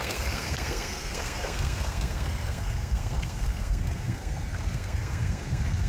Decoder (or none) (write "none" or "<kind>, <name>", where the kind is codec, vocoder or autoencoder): codec, SNAC